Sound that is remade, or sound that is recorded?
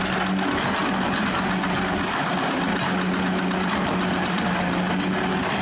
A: recorded